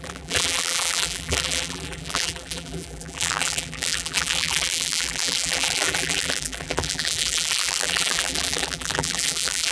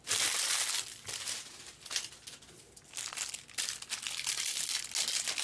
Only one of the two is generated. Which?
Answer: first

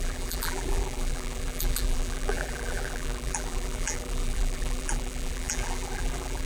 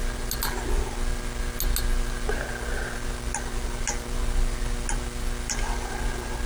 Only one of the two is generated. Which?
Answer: first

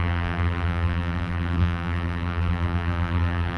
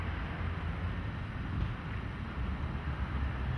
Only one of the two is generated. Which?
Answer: first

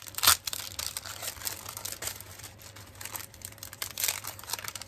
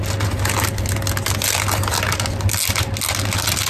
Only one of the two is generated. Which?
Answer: first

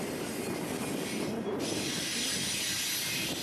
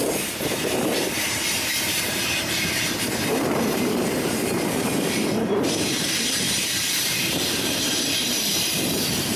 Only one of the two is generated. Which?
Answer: second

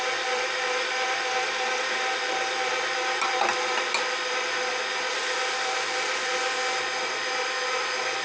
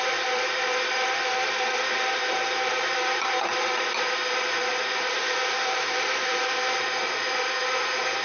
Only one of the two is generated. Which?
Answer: second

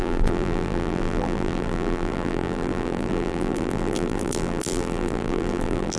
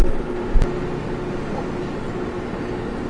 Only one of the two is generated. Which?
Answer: first